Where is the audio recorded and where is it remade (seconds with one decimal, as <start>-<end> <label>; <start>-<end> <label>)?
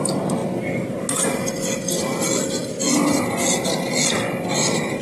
0.0-5.0 recorded